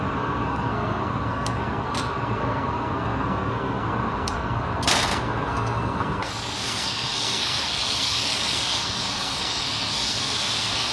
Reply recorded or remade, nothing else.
remade